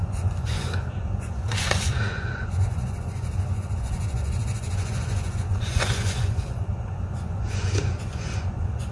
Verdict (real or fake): fake